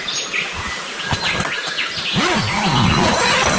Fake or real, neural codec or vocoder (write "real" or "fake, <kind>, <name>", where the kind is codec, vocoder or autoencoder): real